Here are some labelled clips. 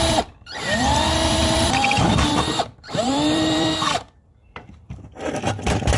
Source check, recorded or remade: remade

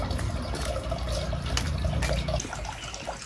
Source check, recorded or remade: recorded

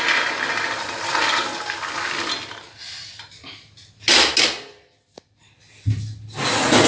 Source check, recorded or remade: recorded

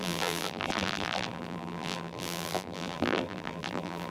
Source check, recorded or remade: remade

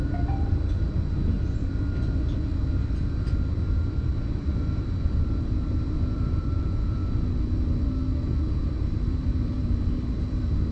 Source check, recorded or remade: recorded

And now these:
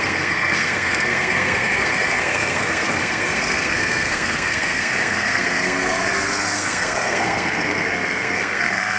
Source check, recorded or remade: remade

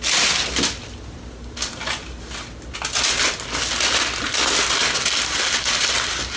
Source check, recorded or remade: recorded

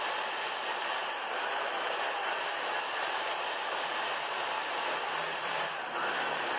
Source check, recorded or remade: remade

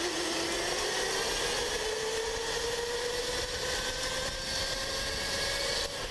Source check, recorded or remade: recorded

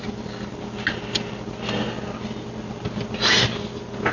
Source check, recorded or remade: recorded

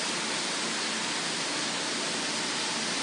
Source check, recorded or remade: recorded